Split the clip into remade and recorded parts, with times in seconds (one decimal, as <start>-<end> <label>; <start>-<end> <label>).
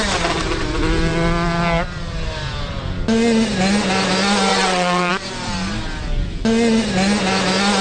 0.0-4.5 recorded; 4.5-5.1 remade; 5.1-7.8 recorded